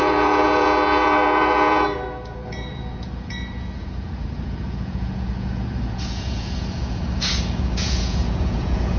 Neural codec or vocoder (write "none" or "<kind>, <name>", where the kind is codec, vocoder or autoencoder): vocoder, Vocos